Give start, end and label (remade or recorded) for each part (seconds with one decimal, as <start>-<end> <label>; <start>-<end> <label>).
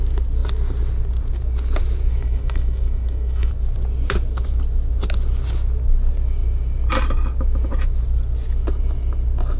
0.0-2.1 recorded; 2.1-3.5 remade; 3.5-9.6 recorded